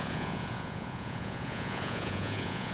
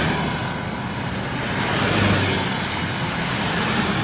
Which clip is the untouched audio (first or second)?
second